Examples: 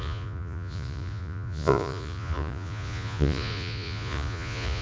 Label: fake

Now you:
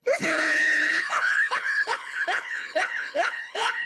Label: fake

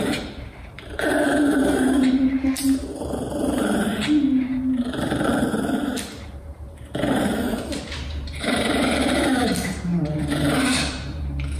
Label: fake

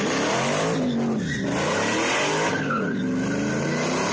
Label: real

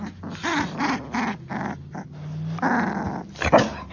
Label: real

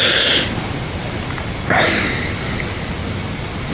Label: real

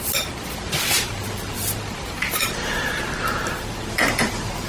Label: fake